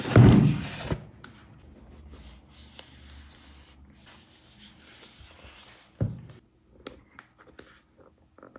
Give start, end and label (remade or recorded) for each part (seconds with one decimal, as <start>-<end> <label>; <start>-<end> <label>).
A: 0.0-8.6 recorded